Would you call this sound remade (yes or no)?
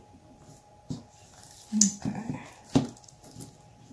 no